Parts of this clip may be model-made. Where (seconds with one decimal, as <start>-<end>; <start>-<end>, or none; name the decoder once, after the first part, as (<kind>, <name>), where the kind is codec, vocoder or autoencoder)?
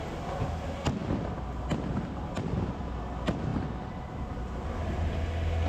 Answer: 1.0-3.0 (vocoder, BigVGAN v2); 3.5-5.1